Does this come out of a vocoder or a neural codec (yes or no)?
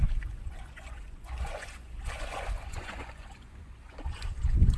yes